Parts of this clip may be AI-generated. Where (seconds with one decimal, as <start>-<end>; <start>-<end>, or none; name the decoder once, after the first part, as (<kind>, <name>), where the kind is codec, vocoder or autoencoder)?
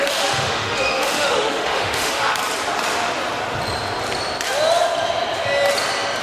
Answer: 0.0-2.4 (autoencoder, DAC-VAE)